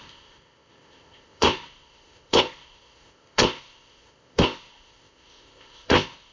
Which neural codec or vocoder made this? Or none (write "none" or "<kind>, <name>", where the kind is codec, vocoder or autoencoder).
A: codec, ZipCodec